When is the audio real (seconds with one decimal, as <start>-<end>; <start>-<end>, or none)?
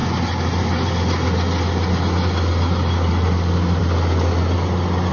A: 0.0-5.1